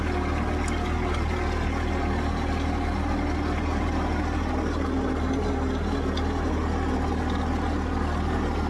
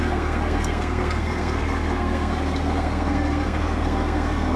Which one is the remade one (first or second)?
second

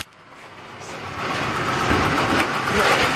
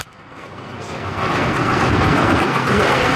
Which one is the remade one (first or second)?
second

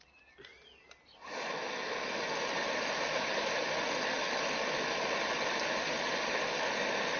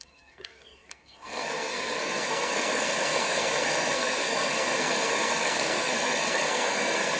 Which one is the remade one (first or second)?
second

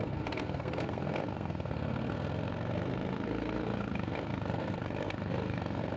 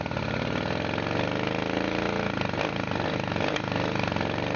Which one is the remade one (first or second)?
first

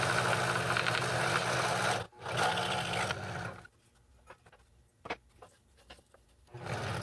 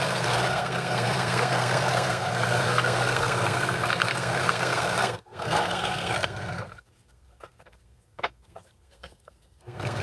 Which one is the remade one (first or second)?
second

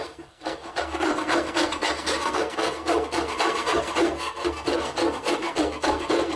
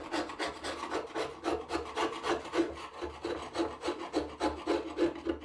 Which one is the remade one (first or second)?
first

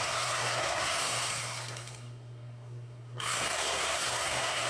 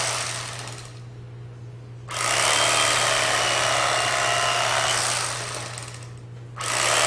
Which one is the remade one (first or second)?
first